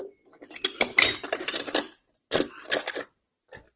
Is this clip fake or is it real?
real